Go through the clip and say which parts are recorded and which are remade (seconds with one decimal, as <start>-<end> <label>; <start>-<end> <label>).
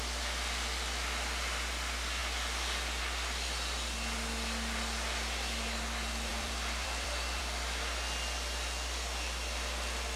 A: 0.0-6.3 recorded; 6.3-7.4 remade; 7.4-10.2 recorded